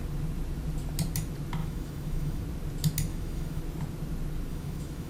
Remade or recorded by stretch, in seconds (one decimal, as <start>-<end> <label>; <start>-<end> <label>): 0.0-1.6 recorded; 1.6-2.4 remade; 2.4-3.1 recorded; 3.1-3.6 remade; 3.6-4.5 recorded; 4.5-5.1 remade